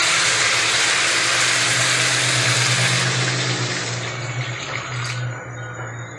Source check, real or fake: real